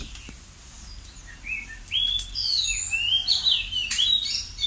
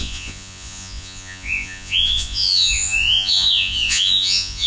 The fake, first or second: second